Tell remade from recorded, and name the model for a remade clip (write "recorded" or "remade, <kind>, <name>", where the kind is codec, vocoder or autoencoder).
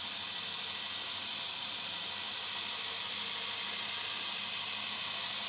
recorded